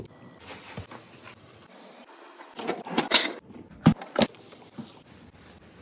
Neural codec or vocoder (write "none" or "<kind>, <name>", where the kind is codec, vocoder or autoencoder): vocoder, BigVGAN v2